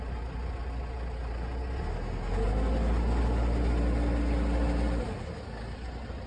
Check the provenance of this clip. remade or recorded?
recorded